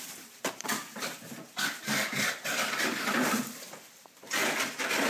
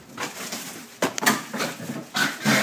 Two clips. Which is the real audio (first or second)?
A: second